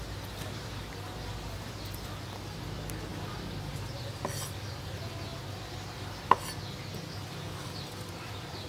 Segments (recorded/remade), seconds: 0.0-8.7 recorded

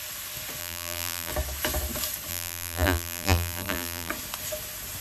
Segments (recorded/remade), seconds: 0.0-0.6 recorded; 0.6-1.3 remade; 1.3-2.3 recorded; 2.3-4.1 remade; 4.1-5.0 recorded

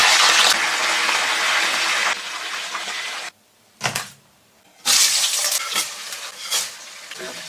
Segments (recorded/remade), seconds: 0.0-2.6 recorded; 2.6-7.5 remade

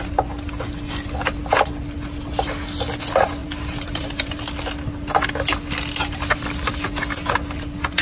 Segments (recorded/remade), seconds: 0.0-3.4 recorded; 3.4-4.4 remade; 4.4-8.0 recorded

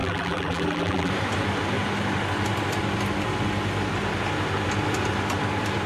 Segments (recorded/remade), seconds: 0.0-1.1 remade; 1.1-5.9 recorded